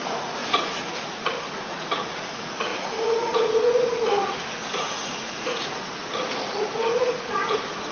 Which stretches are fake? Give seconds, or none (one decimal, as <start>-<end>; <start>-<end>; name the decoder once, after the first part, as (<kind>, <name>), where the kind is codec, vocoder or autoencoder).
0.0-7.9 (vocoder, Vocos)